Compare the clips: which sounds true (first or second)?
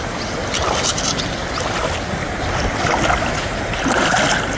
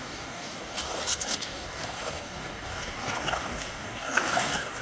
first